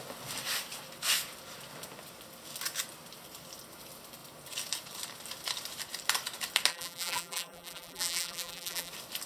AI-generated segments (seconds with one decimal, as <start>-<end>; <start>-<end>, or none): 6.7-8.9